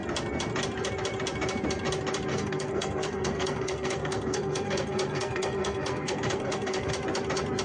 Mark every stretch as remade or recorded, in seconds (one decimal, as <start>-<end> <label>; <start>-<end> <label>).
0.0-2.3 recorded; 2.3-6.9 remade; 6.9-7.6 recorded